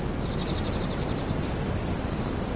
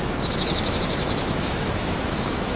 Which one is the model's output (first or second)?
second